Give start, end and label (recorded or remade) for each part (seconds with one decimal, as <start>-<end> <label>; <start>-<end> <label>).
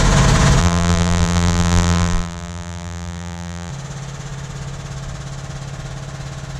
0.0-0.6 recorded; 0.6-3.7 remade; 3.7-6.6 recorded